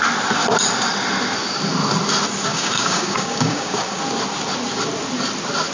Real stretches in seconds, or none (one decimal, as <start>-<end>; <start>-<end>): 0.0-2.5; 4.0-5.7